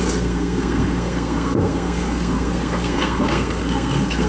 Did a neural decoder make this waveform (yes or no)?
yes